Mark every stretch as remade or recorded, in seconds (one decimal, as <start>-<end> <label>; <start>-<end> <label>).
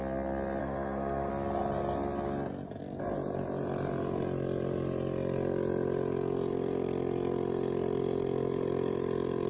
0.0-0.6 recorded; 0.6-1.3 remade; 1.3-9.5 recorded